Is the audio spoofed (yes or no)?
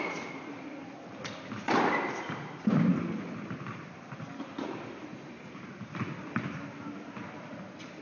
no